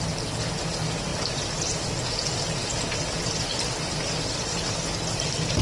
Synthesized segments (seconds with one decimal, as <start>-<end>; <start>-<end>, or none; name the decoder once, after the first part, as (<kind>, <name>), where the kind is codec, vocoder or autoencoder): none